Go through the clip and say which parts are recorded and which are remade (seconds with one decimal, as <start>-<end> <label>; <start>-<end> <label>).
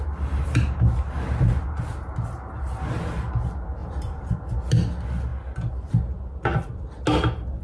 0.0-3.8 recorded; 3.8-4.3 remade; 4.3-7.6 recorded